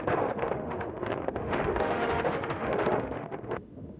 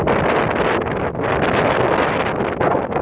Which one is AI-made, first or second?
first